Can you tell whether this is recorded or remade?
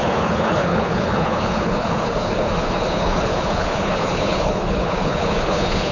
remade